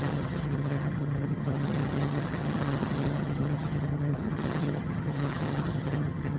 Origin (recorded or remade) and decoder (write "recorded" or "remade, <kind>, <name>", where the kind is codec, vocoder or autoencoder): remade, vocoder, HiFi-GAN